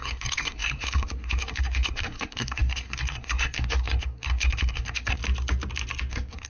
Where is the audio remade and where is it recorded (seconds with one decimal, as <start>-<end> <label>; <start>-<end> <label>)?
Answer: 0.0-5.2 remade; 5.2-6.1 recorded; 6.1-6.5 remade